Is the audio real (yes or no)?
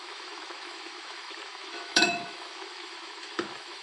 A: no